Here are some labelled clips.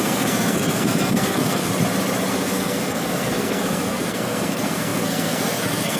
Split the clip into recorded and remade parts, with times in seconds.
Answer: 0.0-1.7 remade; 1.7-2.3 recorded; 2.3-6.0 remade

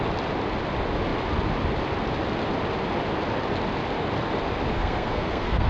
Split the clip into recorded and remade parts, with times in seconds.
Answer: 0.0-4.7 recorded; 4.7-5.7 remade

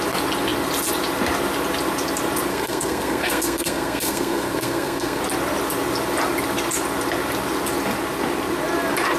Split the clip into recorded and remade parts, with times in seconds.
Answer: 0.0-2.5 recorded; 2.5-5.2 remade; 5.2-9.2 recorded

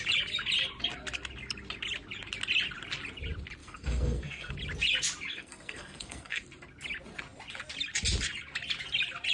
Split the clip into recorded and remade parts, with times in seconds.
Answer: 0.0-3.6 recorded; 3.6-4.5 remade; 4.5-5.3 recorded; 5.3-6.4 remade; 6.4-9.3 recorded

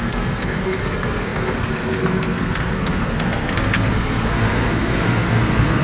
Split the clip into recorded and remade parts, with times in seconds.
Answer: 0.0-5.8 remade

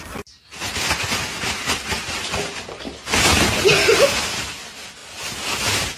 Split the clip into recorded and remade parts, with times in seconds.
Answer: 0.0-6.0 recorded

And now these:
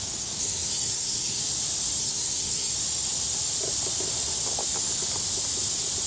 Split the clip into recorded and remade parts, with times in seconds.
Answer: 0.0-0.4 recorded; 0.4-1.4 remade; 1.4-2.0 recorded; 2.0-2.7 remade; 2.7-6.1 recorded

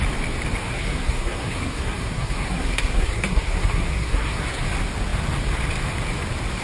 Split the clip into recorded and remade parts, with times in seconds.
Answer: 0.0-0.6 recorded; 0.6-4.6 remade; 4.6-6.6 recorded